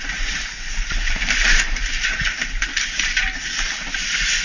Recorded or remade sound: remade